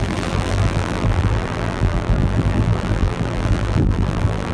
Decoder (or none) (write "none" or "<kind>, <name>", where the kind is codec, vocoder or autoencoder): vocoder, BigVGAN v2